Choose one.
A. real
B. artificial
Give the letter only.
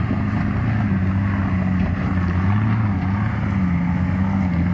A